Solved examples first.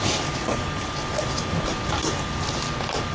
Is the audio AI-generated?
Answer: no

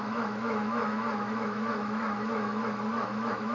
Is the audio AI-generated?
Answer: yes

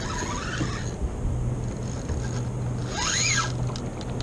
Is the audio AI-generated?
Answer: no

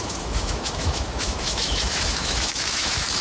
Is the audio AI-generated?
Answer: yes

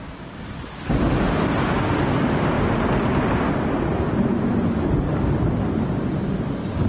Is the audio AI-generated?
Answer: no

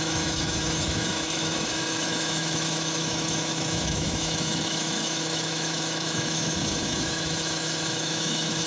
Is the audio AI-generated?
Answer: yes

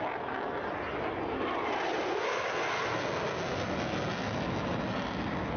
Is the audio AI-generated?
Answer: no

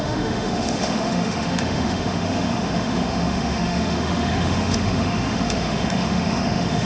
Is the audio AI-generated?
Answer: yes